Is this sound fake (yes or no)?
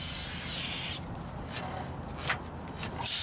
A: no